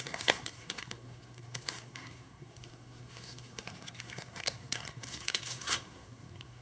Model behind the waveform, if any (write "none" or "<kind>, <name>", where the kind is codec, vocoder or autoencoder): codec, SNAC